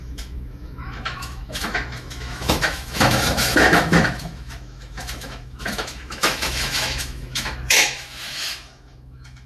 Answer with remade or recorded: remade